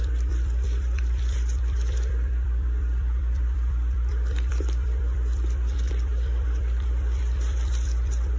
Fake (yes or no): yes